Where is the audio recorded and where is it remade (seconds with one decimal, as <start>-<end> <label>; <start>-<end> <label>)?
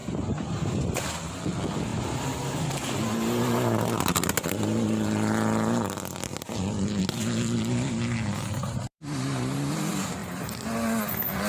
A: 0.0-11.5 recorded